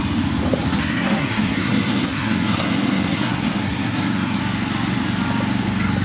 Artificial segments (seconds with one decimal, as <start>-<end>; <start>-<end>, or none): 0.8-4.4